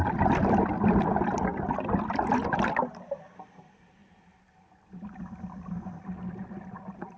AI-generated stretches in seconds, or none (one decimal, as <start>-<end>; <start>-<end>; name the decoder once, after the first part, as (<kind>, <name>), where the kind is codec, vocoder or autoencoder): 0.0-1.5 (vocoder, BigVGAN v2); 2.2-4.0; 6.7-7.2